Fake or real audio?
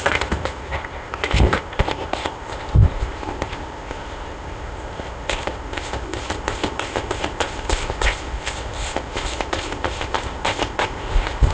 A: fake